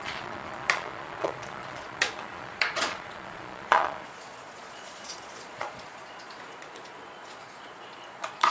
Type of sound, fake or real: fake